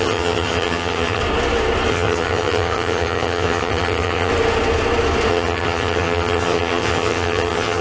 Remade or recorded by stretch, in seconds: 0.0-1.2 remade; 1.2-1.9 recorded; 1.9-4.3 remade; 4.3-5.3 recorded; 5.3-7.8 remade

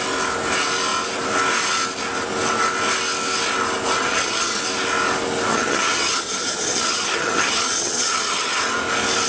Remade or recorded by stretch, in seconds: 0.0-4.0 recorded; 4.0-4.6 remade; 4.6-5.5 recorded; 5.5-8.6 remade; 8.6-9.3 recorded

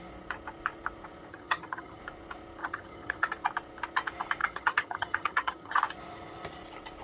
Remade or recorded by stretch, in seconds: 0.0-1.3 recorded; 1.3-2.0 remade; 2.0-2.6 recorded; 2.6-3.3 remade; 3.3-4.4 recorded; 4.4-5.8 remade; 5.8-7.0 recorded